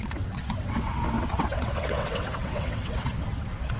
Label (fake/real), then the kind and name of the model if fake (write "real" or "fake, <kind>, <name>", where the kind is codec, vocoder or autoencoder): fake, vocoder, WaveNeXt